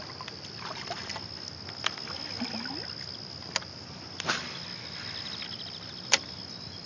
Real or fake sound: real